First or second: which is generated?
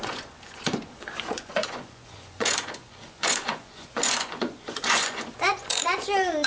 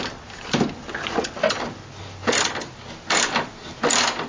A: first